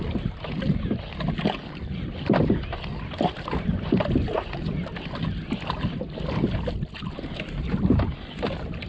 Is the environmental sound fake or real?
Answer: real